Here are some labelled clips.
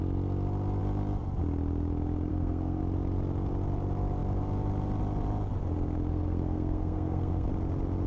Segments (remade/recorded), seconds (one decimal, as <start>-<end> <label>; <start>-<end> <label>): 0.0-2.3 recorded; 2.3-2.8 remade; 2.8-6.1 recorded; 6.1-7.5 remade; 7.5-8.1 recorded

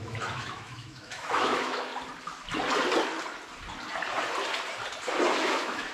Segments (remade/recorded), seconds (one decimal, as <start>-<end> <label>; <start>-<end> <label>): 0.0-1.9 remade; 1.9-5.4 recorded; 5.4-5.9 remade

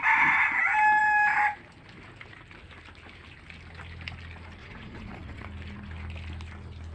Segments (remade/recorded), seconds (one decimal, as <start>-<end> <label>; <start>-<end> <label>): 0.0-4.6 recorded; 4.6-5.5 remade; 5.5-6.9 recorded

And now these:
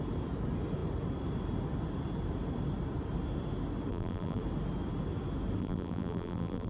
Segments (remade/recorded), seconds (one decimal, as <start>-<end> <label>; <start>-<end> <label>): 0.0-3.9 recorded; 3.9-4.4 remade; 4.4-5.6 recorded; 5.6-6.7 remade

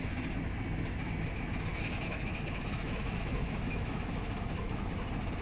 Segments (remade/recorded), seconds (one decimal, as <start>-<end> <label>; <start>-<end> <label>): 0.0-1.7 recorded; 1.7-4.9 remade; 4.9-5.4 recorded

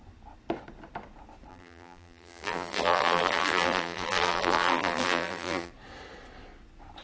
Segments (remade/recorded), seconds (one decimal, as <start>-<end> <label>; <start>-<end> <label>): 0.0-1.5 recorded; 1.5-5.7 remade; 5.7-7.0 recorded

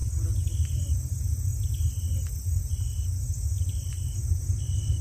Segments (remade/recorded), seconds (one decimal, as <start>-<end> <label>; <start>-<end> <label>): 0.0-5.0 recorded